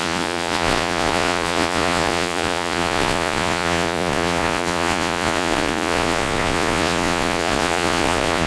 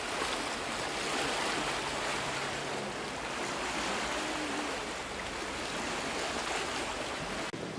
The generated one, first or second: first